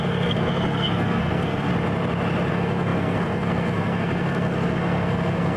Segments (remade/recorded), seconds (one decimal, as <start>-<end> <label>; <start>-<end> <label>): 0.0-1.7 remade; 1.7-2.5 recorded; 2.5-5.6 remade